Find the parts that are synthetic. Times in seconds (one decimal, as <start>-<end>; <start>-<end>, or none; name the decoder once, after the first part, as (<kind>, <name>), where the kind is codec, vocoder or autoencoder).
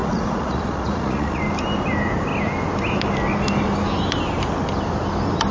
0.0-1.4 (vocoder, Vocos)